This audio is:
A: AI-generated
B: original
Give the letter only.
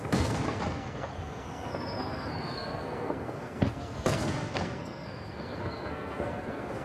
A